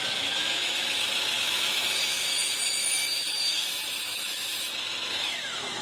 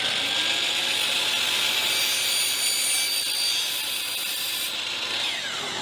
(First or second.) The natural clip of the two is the second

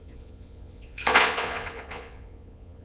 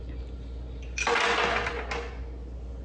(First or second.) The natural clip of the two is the second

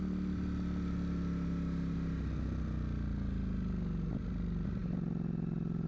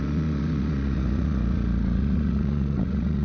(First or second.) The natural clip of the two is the first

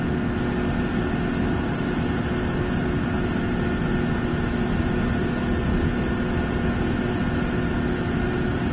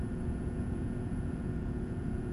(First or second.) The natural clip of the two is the first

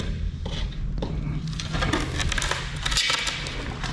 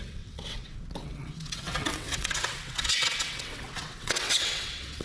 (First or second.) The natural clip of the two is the first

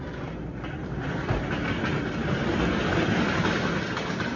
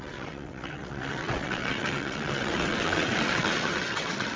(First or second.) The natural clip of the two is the first